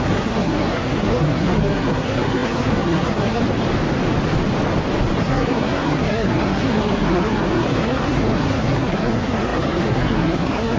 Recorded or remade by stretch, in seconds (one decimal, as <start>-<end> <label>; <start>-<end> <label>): 0.0-3.4 remade; 3.4-5.2 recorded; 5.2-10.8 remade